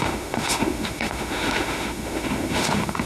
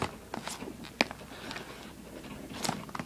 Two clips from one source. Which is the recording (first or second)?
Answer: second